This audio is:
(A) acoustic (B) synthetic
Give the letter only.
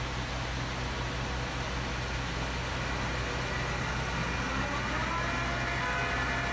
A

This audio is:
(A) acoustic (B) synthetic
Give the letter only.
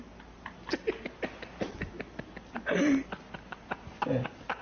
A